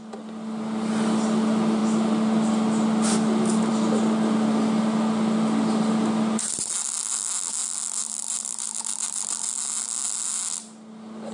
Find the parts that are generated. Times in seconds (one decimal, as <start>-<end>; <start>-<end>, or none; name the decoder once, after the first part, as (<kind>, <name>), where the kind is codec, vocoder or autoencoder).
none